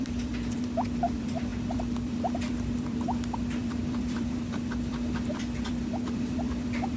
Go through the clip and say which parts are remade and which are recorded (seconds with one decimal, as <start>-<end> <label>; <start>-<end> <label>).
0.0-7.0 remade